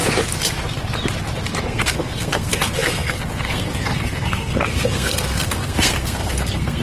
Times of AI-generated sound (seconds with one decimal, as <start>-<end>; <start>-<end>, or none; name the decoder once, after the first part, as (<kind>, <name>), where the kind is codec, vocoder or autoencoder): 1.6-6.8 (codec, SNAC)